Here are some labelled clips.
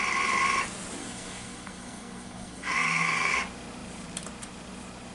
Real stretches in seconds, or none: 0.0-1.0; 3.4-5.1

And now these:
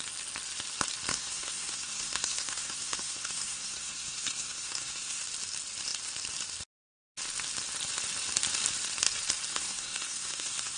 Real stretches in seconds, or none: 0.0-1.1; 5.2-9.5

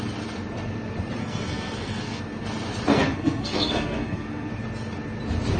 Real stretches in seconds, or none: 0.0-1.2; 2.2-2.9; 4.5-5.6

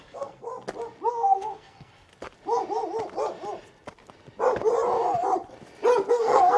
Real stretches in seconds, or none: 0.5-1.1; 2.1-6.1

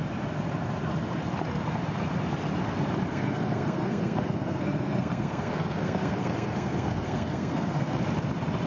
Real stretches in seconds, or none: 0.0-3.1; 8.0-8.7

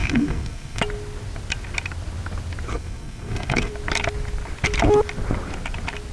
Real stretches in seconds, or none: 0.8-2.7; 3.7-6.1